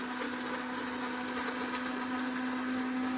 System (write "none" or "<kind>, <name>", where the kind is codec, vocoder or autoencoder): none